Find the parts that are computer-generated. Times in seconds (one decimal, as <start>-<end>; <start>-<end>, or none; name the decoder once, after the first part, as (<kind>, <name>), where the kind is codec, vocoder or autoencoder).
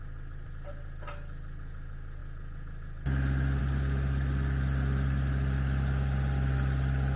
none